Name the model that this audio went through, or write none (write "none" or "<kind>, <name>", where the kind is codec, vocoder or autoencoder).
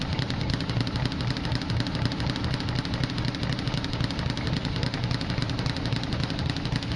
none